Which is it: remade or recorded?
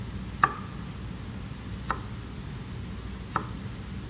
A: recorded